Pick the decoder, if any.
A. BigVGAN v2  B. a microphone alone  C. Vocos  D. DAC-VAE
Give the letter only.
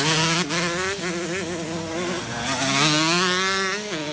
B